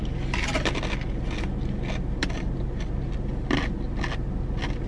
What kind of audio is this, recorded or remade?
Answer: recorded